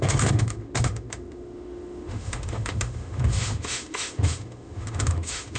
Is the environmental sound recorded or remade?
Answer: remade